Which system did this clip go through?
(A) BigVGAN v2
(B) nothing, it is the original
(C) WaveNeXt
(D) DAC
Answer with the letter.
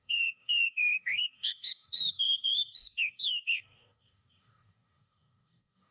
D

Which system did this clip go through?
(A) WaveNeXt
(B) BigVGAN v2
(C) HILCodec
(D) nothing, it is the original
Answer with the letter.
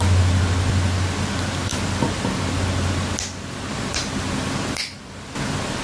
D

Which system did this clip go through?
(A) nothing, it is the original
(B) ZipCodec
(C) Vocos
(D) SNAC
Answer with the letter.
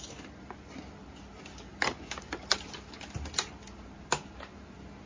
A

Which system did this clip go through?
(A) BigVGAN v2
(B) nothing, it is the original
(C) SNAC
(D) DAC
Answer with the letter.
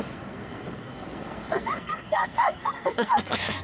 C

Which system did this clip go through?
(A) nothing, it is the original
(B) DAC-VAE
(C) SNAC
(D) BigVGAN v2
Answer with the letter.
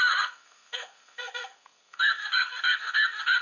C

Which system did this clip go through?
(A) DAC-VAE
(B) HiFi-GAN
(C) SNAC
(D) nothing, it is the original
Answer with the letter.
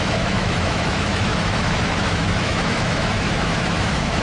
A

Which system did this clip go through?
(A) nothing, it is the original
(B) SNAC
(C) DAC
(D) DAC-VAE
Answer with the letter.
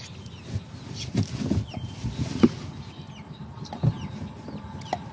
A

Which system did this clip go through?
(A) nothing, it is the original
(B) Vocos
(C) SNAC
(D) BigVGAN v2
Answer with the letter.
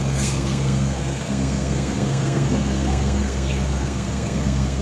C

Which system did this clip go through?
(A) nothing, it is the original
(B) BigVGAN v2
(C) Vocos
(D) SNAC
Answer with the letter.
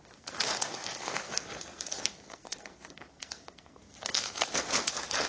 D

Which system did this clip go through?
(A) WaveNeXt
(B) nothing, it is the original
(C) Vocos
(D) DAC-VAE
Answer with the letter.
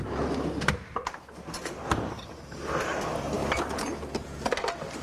B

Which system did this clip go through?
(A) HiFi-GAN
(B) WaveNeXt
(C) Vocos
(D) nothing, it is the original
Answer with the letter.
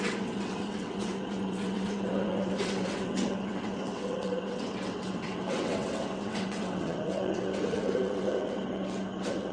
B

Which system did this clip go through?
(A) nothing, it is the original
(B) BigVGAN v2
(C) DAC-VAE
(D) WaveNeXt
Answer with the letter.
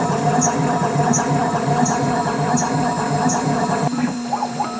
B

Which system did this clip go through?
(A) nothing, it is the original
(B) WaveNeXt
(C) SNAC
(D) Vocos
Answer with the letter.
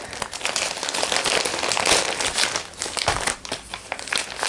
A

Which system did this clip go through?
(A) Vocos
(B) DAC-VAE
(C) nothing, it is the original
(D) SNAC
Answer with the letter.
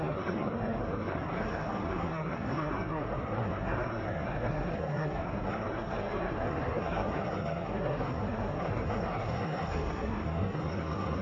D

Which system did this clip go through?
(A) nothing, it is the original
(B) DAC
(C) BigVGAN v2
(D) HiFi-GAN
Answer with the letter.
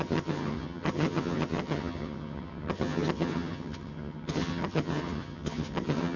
D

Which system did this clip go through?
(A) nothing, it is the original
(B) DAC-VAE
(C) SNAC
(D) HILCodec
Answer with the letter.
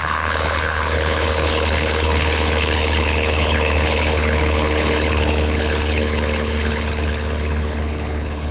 D